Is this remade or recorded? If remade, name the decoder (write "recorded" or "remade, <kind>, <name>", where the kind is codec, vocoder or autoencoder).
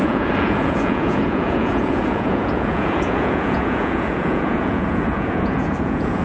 remade, vocoder, Vocos